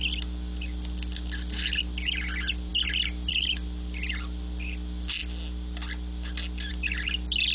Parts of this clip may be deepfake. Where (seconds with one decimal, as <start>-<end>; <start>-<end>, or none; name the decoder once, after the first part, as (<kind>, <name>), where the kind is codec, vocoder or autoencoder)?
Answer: none